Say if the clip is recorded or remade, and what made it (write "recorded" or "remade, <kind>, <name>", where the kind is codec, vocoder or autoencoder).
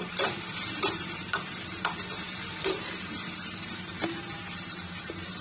remade, vocoder, BigVGAN v2